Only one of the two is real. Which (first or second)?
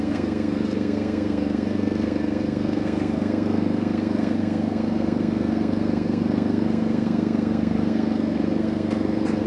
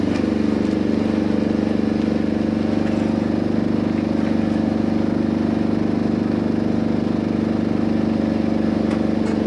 second